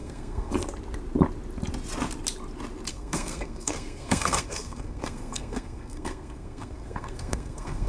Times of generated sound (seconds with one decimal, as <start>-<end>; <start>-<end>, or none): 0.0-0.5; 2.9-7.9